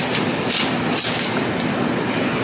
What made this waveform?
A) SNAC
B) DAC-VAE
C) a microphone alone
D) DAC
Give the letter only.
C